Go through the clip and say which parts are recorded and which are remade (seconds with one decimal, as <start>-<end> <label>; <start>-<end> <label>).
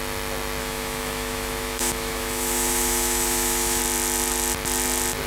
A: 0.0-0.6 recorded; 0.6-3.8 remade; 3.8-5.3 recorded